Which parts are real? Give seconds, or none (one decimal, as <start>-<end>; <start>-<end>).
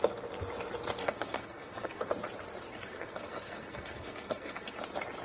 0.0-1.0; 2.1-2.7; 4.8-5.2